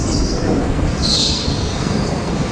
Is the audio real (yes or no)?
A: no